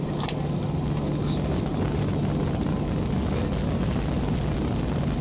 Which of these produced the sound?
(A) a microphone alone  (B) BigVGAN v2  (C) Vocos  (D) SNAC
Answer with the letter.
A